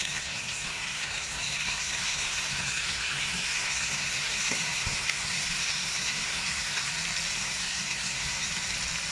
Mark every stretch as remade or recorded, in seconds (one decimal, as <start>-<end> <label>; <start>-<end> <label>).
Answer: 0.0-6.9 remade; 6.9-7.4 recorded; 7.4-8.5 remade; 8.5-9.1 recorded